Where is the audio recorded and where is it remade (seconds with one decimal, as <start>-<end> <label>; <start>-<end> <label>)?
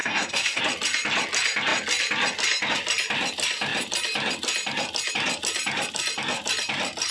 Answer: 0.0-0.6 remade; 0.6-7.1 recorded